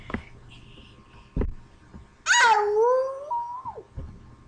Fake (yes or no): no